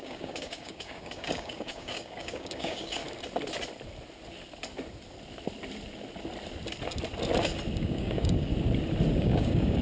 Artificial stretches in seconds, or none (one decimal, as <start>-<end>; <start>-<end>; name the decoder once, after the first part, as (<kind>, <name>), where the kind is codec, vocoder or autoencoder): 0.0-3.0 (codec, DAC); 7.8-8.5; 9.1-9.8